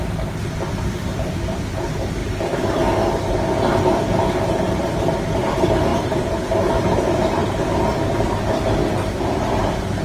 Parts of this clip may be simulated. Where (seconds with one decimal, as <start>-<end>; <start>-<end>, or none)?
5.9-6.4